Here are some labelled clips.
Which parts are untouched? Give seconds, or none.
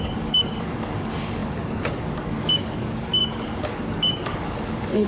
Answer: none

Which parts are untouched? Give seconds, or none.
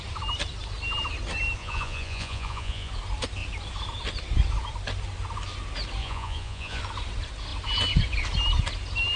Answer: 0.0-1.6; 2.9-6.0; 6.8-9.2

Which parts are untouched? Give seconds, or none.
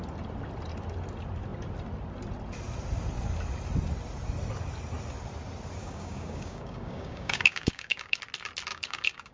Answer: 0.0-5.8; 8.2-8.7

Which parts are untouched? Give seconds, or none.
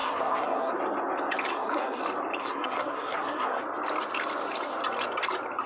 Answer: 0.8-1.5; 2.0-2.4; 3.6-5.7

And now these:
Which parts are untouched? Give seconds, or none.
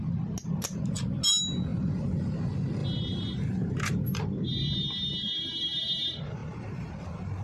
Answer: 0.0-1.7; 2.3-2.8; 5.3-6.4; 6.9-7.4